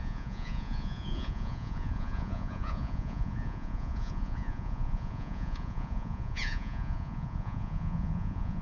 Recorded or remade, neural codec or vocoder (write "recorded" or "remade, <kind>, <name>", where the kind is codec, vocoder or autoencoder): remade, vocoder, Vocos